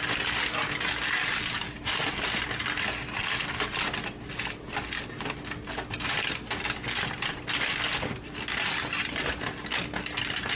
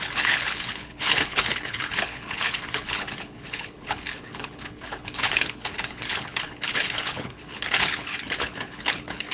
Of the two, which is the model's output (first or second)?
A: second